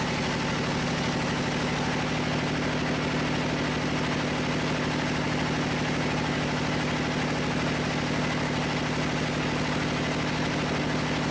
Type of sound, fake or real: real